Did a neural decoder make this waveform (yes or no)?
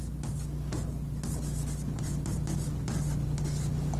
no